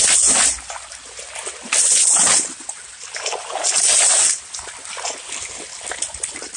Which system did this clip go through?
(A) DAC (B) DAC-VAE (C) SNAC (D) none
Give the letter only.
D